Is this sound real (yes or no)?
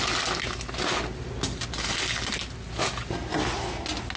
yes